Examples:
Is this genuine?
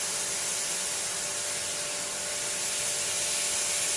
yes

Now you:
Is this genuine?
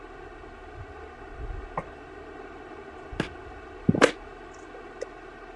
yes